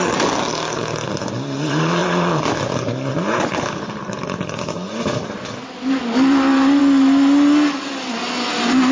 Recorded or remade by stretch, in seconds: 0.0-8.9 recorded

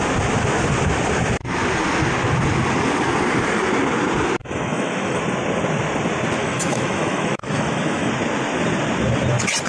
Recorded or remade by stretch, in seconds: 0.0-4.4 recorded; 4.4-5.2 remade; 5.2-6.4 recorded; 6.4-8.1 remade; 8.1-9.7 recorded

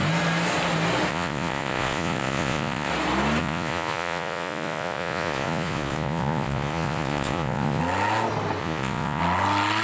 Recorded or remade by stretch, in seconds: 0.0-1.1 recorded; 1.1-2.9 remade; 2.9-3.4 recorded; 3.4-7.8 remade; 7.8-8.6 recorded; 8.6-9.2 remade; 9.2-9.8 recorded

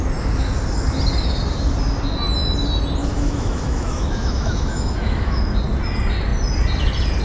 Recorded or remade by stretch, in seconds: 0.0-3.0 recorded; 3.0-5.4 remade; 5.4-7.2 recorded

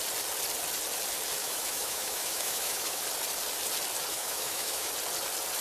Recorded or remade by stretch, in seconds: 0.0-1.4 recorded; 1.4-3.0 remade; 3.0-4.1 recorded; 4.1-4.9 remade; 4.9-5.6 recorded

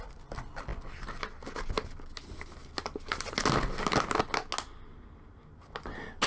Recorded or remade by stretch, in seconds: 0.0-6.3 recorded